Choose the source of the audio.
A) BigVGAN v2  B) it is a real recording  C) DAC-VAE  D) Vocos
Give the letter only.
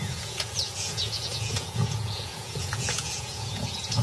D